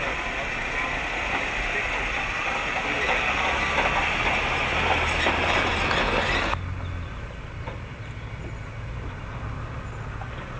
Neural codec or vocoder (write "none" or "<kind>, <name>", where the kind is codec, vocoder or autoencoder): none